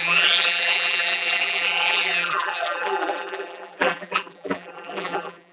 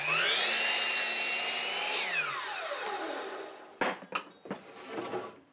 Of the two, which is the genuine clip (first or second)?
second